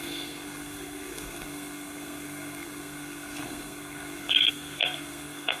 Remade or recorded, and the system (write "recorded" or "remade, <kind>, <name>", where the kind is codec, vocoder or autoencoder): remade, codec, SNAC